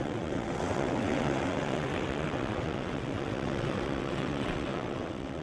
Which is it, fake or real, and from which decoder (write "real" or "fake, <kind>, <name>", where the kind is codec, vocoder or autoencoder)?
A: fake, vocoder, WaveNeXt